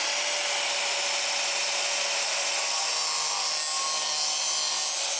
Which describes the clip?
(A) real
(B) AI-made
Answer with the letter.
A